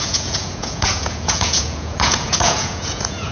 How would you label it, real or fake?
fake